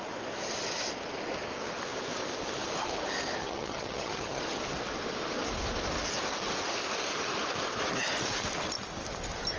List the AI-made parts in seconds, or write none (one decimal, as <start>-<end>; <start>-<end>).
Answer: 3.4-4.4